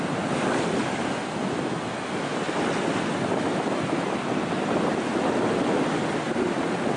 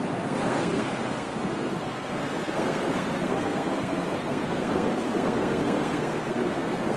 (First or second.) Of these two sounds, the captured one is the first